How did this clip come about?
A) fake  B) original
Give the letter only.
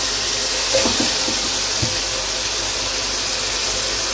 B